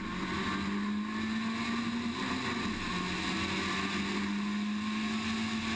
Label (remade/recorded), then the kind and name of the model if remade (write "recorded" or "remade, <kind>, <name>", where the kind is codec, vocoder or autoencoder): recorded